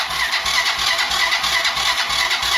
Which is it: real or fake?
real